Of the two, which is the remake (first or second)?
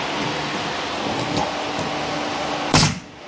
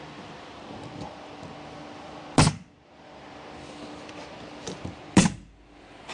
second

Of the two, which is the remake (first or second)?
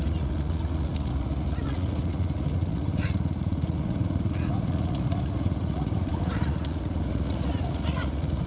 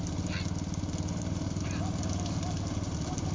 first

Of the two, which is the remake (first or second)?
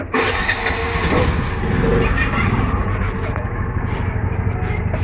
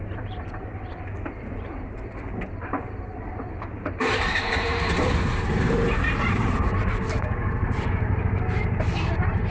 second